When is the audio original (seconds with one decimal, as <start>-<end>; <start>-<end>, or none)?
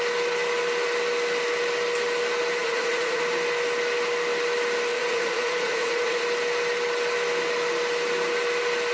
0.0-2.6; 3.2-4.9; 6.2-8.9